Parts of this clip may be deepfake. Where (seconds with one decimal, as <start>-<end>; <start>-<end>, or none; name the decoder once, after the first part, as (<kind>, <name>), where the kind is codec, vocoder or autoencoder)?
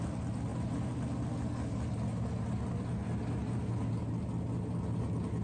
none